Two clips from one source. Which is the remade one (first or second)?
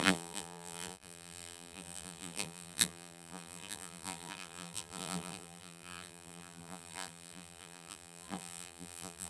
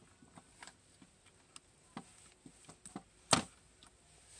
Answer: first